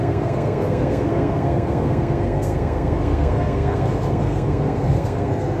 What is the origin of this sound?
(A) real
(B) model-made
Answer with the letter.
B